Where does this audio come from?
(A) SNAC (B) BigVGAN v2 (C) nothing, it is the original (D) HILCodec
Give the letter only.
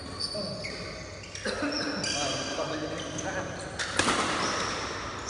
C